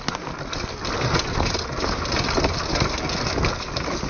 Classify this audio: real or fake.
real